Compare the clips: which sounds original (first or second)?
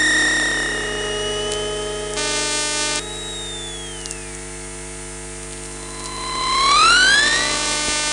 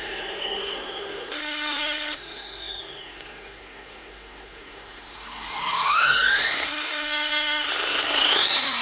first